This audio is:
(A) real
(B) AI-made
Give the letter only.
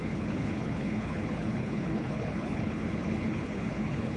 B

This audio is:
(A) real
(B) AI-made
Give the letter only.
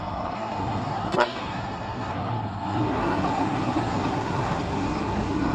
B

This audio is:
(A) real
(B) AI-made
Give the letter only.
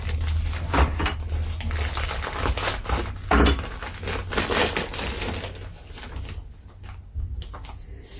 A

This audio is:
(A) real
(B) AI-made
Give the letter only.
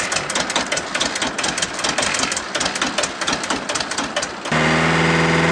A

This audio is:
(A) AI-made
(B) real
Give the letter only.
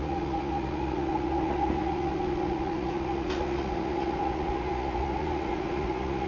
A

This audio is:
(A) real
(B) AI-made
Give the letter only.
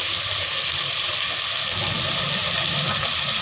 B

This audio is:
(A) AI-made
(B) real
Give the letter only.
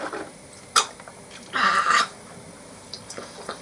A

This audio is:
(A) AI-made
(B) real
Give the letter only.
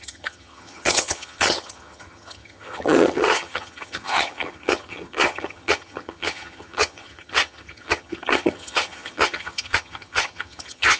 A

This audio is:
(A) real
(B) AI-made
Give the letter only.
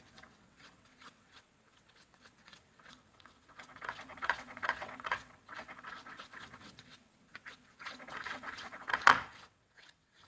B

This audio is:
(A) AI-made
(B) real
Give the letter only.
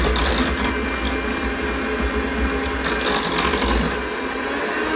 B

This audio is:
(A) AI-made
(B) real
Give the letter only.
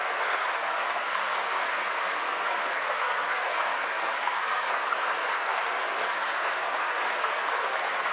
A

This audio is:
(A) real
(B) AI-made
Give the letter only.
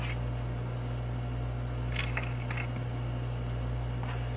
A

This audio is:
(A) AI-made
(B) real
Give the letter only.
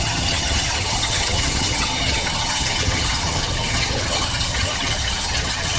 A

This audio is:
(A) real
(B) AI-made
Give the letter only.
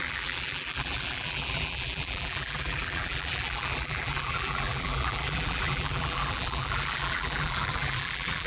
B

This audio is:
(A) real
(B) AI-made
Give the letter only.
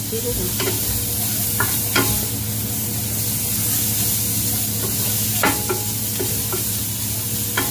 A